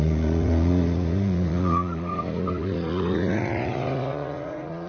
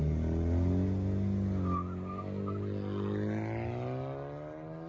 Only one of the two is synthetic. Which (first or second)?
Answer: first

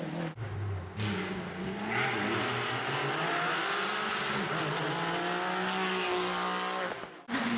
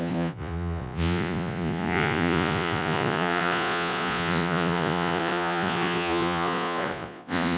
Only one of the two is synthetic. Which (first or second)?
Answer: second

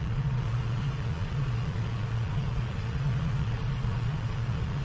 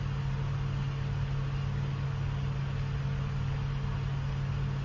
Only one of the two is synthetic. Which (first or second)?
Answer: first